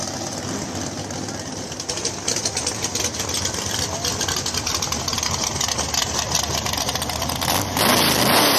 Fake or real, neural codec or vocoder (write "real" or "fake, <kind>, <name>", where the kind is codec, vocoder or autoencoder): real